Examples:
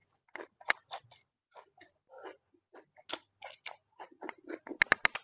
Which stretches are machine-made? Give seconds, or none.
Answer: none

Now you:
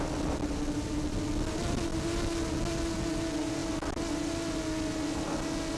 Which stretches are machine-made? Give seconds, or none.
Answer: none

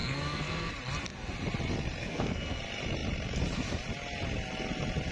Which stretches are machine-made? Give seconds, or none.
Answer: 0.0-0.7 (codec, SNAC); 2.0-2.6

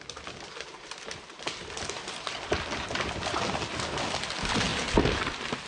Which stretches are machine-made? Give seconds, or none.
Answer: none

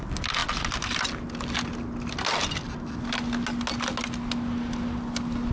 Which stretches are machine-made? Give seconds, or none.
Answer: none

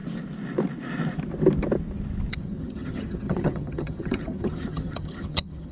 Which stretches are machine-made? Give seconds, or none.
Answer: 2.3-5.7 (vocoder, HiFi-GAN)

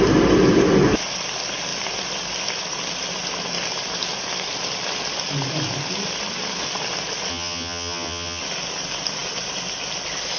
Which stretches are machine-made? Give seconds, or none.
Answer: 7.3-8.4 (vocoder, HiFi-GAN)